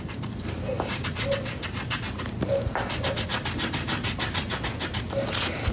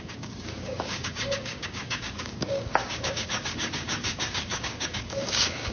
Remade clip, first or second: second